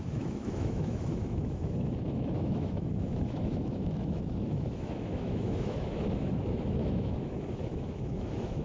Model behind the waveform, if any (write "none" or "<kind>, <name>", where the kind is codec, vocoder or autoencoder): autoencoder, DAC-VAE